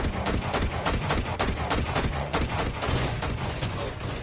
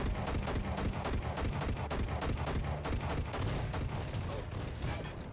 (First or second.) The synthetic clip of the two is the first